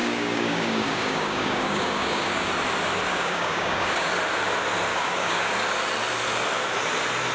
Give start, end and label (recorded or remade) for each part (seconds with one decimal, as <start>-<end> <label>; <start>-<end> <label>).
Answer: 0.0-2.5 remade; 2.5-3.1 recorded; 3.1-4.1 remade; 4.1-4.9 recorded; 4.9-5.5 remade; 5.5-7.3 recorded